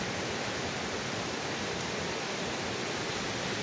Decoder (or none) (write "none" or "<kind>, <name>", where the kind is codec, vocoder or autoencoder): none